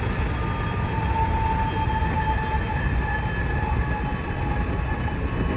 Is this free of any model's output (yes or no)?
yes